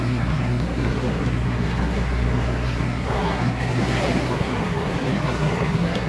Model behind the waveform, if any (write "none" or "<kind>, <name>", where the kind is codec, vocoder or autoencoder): codec, SNAC